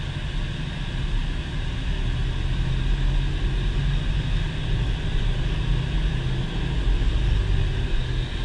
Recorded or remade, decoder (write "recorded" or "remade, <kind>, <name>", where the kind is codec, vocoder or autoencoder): recorded